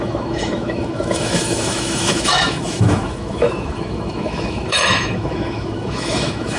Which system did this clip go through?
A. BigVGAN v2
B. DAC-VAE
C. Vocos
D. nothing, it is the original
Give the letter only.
B